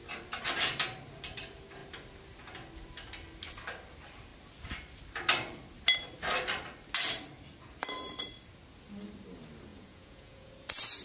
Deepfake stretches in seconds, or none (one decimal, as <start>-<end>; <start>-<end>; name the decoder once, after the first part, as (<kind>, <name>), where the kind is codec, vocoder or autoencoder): 9.7-10.5 (vocoder, Vocos)